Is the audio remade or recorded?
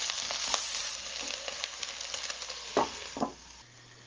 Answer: recorded